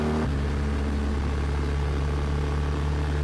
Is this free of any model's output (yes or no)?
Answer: yes